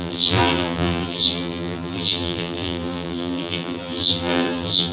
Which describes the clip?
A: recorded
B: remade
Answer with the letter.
B